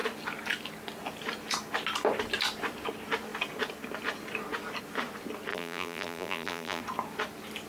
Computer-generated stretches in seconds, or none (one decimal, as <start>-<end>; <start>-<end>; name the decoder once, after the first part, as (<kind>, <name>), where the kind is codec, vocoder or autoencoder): 5.5-6.8 (vocoder, BigVGAN v2)

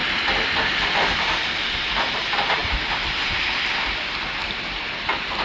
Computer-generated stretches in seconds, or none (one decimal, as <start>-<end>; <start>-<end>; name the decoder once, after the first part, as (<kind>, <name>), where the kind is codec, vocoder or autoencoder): 0.6-2.6 (vocoder, BigVGAN v2); 3.3-5.4

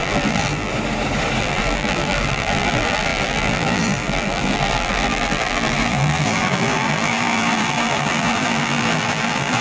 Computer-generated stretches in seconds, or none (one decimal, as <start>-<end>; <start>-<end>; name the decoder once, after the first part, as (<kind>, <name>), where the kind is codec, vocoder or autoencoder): 0.0-0.7 (vocoder, BigVGAN v2); 1.4-9.6

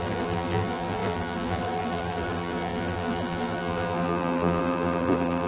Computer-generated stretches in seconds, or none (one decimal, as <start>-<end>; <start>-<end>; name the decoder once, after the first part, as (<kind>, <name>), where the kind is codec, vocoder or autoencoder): 0.0-5.5 (vocoder, BigVGAN v2)